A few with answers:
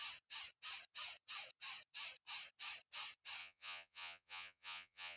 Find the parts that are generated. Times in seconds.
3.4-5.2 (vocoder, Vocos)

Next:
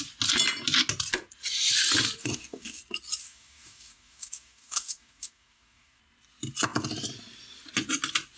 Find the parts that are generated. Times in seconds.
2.2-2.8 (codec, DAC); 3.2-6.0

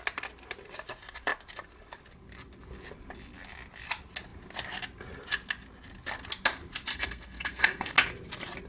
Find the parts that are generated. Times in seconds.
6.9-7.9 (codec, SNAC)

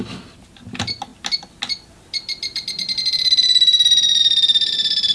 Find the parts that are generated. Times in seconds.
none